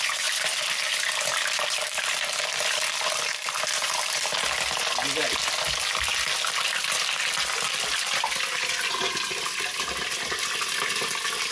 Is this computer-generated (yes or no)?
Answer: no